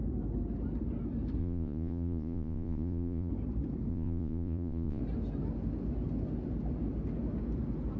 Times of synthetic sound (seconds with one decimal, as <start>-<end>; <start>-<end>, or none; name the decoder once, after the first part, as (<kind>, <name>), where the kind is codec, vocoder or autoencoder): 1.4-3.3 (vocoder, Vocos); 3.9-5.0